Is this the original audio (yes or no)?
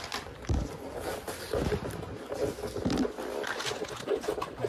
yes